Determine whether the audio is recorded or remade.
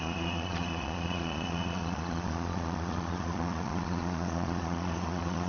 remade